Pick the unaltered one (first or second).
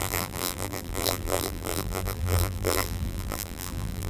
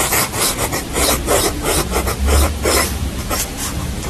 second